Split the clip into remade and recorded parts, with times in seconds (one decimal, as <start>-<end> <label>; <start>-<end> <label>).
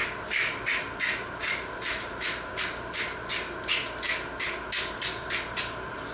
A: 0.0-3.7 remade; 3.7-6.1 recorded